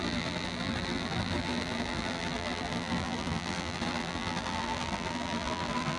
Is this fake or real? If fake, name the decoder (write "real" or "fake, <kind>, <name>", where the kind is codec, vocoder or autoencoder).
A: fake, vocoder, BigVGAN v2